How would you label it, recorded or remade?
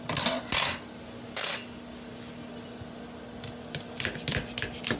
recorded